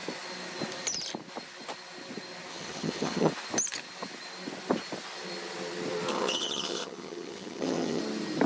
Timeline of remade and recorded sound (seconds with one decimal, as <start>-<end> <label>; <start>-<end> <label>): 0.0-2.5 recorded; 2.5-3.3 remade; 3.3-6.1 recorded; 6.1-8.0 remade; 8.0-8.5 recorded